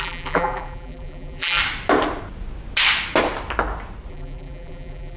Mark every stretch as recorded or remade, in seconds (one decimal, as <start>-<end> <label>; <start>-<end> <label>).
0.0-1.6 remade; 1.6-4.1 recorded; 4.1-5.2 remade